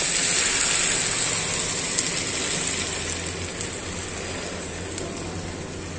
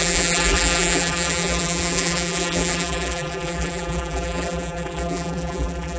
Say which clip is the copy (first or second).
second